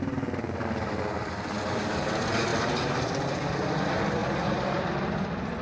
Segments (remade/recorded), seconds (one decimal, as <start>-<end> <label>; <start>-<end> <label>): 0.0-4.2 recorded; 4.2-4.9 remade; 4.9-5.6 recorded